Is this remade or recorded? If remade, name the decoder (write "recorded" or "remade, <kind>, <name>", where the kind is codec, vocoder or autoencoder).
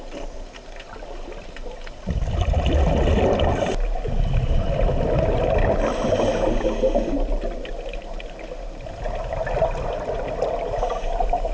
recorded